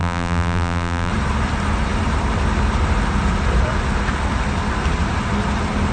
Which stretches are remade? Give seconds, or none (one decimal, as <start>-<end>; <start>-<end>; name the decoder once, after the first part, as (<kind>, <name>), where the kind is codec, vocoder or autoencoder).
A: 0.0-1.1 (vocoder, BigVGAN v2)